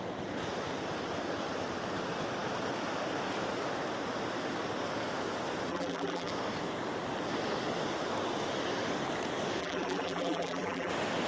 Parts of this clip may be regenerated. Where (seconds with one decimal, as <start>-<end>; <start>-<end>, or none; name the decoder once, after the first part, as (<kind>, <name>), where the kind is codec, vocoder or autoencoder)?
5.7-6.3 (vocoder, BigVGAN v2); 9.6-10.9